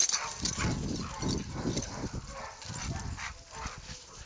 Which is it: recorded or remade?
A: recorded